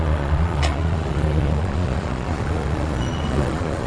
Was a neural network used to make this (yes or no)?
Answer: yes